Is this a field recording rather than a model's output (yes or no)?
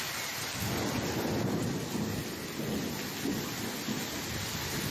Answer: yes